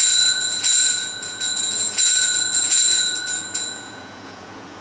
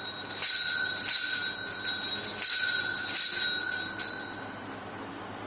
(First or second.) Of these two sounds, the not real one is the first